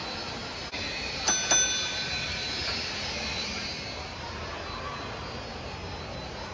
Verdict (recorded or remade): recorded